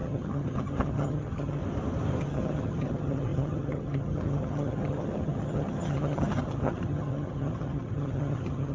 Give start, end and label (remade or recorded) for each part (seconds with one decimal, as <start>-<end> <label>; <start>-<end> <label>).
0.0-1.6 remade; 1.6-2.2 recorded; 2.2-8.7 remade